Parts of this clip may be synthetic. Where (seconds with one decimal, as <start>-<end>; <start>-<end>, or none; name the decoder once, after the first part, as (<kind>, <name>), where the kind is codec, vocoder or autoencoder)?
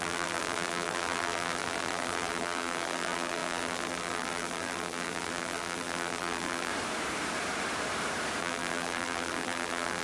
0.0-6.7 (vocoder, BigVGAN v2); 8.4-10.0